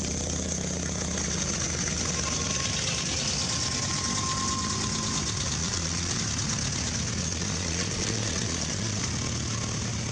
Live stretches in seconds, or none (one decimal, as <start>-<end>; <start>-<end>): 0.0-5.6; 6.2-7.2; 9.0-10.1